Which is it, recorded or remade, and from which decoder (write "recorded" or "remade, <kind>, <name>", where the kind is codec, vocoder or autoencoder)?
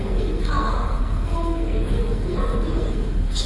remade, codec, SNAC